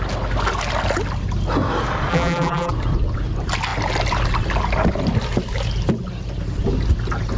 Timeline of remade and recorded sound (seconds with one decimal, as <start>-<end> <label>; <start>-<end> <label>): 0.0-2.1 recorded; 2.1-2.7 remade; 2.7-7.4 recorded

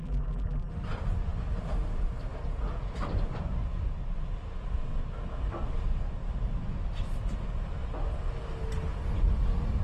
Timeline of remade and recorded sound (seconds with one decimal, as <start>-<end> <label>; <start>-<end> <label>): 0.0-0.7 remade; 0.7-9.8 recorded

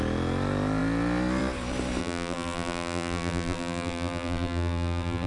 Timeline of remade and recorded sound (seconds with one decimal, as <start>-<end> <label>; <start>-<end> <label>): 0.0-2.0 recorded; 2.0-5.3 remade

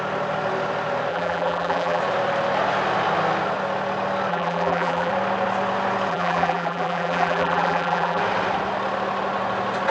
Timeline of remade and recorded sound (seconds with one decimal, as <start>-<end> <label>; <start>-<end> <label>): 0.0-1.1 recorded; 1.1-2.0 remade; 2.0-4.3 recorded; 4.3-5.1 remade; 5.1-6.1 recorded; 6.1-8.2 remade; 8.2-9.9 recorded